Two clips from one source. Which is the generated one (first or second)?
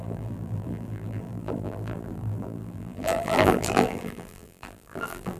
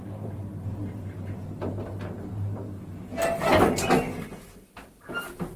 first